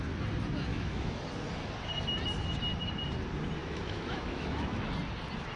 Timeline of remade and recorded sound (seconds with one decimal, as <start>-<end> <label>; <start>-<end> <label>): 0.0-0.7 recorded; 0.7-1.2 remade; 1.2-3.6 recorded; 3.6-4.9 remade; 4.9-5.6 recorded